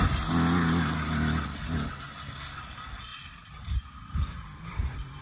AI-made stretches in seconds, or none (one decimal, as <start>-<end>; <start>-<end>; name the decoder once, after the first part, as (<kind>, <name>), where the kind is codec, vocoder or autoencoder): none